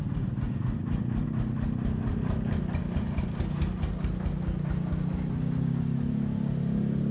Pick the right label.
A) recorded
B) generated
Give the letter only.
A